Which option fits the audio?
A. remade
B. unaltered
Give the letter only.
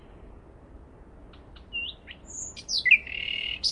B